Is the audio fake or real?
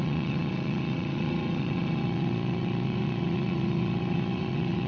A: fake